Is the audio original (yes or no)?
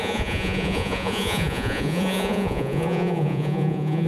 no